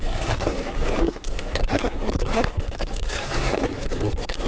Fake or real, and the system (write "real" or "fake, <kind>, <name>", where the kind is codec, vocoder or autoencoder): fake, codec, SNAC